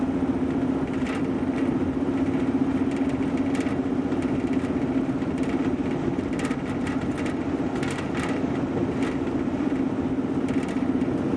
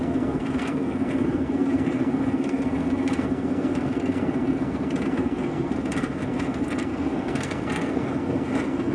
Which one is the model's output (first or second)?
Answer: second